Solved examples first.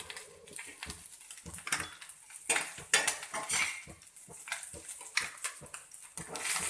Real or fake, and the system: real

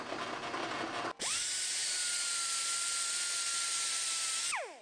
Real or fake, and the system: real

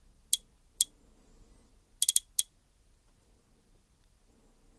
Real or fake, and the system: real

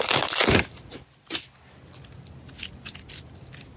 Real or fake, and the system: real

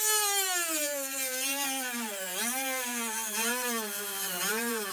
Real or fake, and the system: fake, vocoder, BigVGAN v2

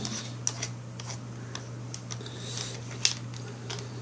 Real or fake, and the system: real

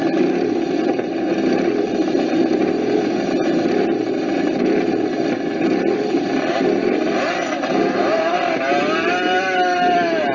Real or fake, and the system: fake, vocoder, BigVGAN v2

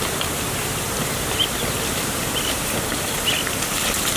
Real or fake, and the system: real